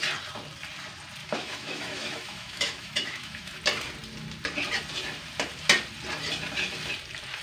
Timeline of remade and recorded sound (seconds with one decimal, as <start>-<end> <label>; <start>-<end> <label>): 0.0-1.2 recorded; 1.2-3.6 remade; 3.6-7.4 recorded